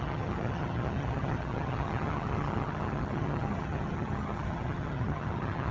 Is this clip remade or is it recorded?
remade